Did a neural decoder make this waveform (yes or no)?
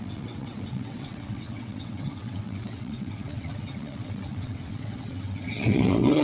yes